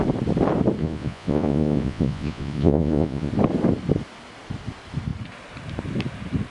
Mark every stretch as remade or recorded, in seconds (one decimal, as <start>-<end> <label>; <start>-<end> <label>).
0.0-0.8 recorded; 0.8-3.3 remade; 3.3-6.5 recorded